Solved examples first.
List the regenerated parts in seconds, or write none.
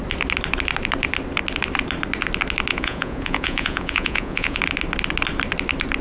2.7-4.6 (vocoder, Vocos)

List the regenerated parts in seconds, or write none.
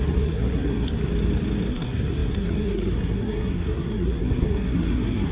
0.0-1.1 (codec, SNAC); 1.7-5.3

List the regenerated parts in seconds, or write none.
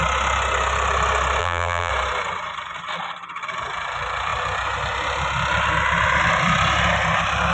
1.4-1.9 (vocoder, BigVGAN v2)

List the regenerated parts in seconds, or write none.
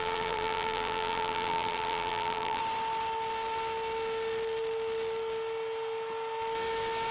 0.0-2.6 (vocoder, BigVGAN v2)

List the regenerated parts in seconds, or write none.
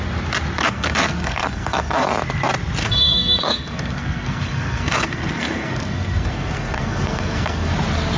0.6-2.1 (codec, SNAC); 2.8-7.7